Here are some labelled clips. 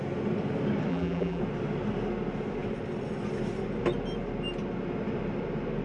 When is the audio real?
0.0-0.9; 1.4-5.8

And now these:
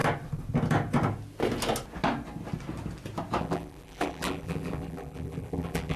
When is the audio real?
0.0-3.4

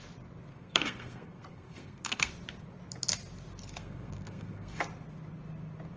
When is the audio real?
0.0-0.5; 2.3-3.8; 4.8-6.0

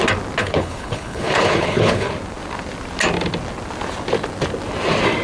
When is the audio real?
0.0-0.4; 2.1-5.2

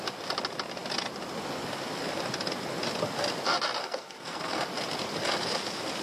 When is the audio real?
0.0-3.8; 4.6-6.0

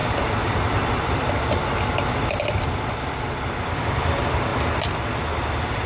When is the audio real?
4.5-5.5

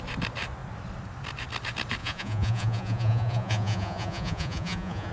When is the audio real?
0.0-2.0

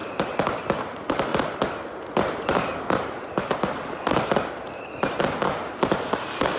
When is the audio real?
0.0-0.8; 1.3-4.5; 5.6-6.6